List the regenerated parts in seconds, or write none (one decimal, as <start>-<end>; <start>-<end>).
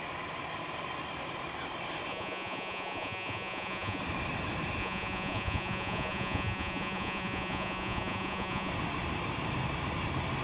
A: 2.1-4.0; 4.8-8.7